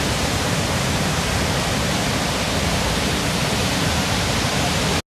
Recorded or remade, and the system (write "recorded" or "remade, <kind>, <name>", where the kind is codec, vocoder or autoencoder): recorded